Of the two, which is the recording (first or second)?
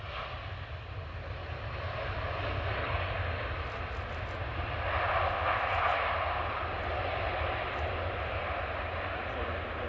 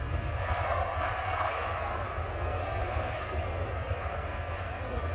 first